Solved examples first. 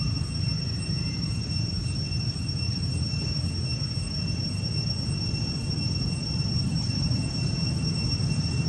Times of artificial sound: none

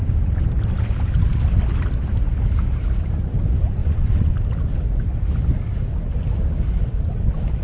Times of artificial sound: 3.8-4.3 (vocoder, WaveNeXt)

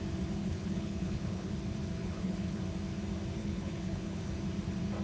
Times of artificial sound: 0.4-1.5 (codec, HILCodec); 2.0-2.6; 3.4-4.3

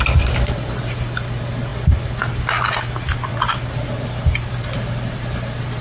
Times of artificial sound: none

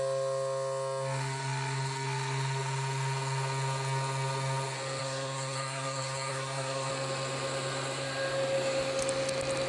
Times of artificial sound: 5.0-6.9 (codec, SNAC)

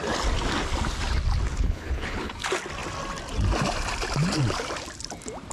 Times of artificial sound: 1.5-2.3 (codec, HILCodec)